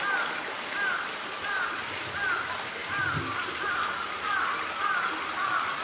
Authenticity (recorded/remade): recorded